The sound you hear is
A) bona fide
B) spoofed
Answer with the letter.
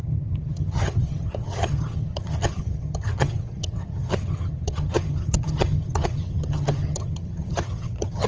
B